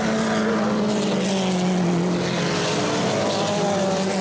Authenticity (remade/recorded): recorded